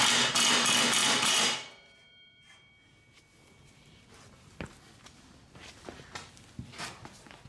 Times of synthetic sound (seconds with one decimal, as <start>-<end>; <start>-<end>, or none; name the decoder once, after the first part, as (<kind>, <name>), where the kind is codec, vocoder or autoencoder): 1.0-2.7 (vocoder, BigVGAN v2)